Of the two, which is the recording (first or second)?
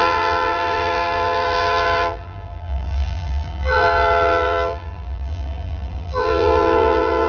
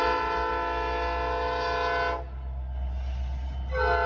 second